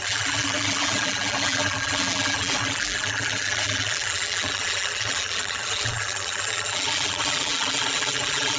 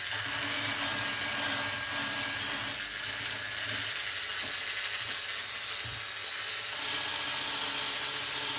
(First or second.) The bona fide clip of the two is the second